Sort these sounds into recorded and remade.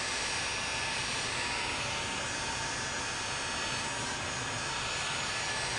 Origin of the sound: recorded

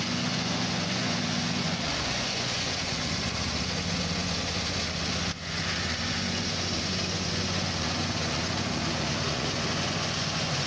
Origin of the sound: remade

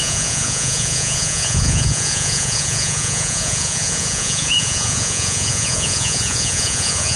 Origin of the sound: remade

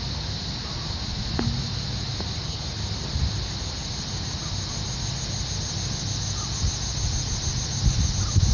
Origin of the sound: recorded